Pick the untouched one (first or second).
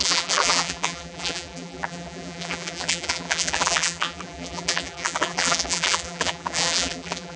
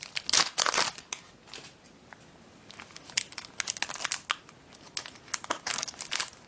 second